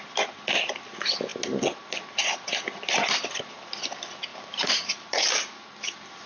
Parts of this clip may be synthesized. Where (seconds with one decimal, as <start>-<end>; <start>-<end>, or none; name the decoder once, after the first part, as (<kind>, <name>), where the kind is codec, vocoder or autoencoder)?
4.3-5.8 (vocoder, BigVGAN v2)